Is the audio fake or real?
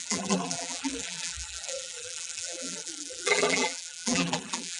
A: fake